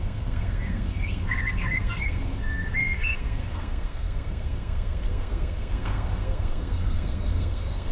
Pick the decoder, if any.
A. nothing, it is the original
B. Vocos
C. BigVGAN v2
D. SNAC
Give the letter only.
D